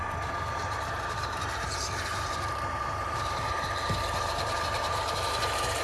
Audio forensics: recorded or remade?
remade